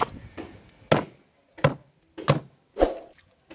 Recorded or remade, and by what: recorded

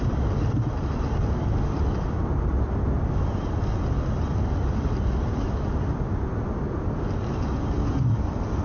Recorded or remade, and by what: recorded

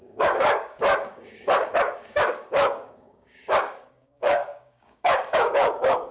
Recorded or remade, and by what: remade, codec, DAC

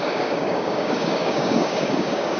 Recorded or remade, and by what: remade, codec, DAC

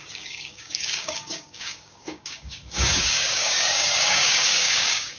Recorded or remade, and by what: remade, codec, DAC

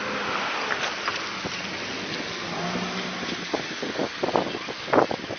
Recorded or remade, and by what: recorded